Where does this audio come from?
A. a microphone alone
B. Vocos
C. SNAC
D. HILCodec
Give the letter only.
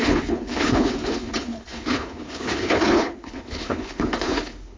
D